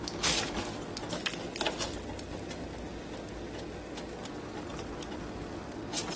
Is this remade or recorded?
recorded